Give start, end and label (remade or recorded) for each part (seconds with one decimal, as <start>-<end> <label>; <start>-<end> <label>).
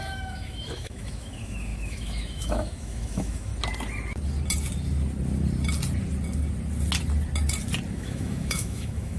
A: 0.0-3.5 remade; 3.5-7.9 recorded; 7.9-9.2 remade